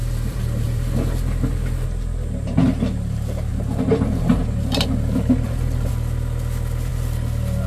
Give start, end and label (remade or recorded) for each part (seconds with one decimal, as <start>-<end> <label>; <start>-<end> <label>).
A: 0.0-0.9 remade; 0.9-3.5 recorded; 3.5-5.9 remade; 5.9-7.7 recorded